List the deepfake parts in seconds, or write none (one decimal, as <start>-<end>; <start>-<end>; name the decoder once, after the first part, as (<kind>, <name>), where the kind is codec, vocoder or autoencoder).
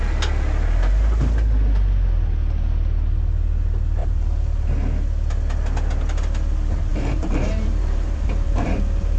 4.0-4.7 (vocoder, BigVGAN v2); 6.9-9.2